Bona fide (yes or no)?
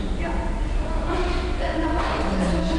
yes